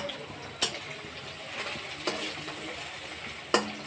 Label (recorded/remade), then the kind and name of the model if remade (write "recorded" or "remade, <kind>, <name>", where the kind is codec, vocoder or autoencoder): recorded